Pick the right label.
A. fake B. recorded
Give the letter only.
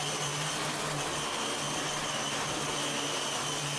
B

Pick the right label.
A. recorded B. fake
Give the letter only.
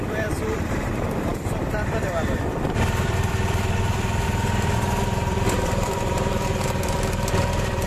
B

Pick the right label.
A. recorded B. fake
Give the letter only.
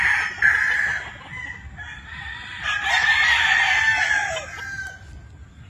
A